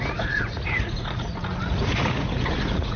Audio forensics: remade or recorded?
remade